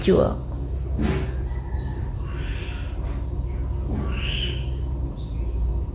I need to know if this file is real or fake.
real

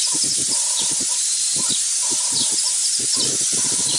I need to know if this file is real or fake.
real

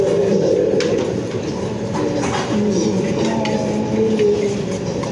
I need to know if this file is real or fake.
real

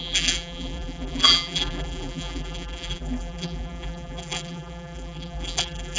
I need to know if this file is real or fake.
fake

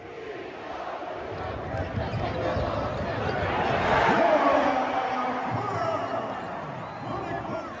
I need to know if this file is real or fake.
real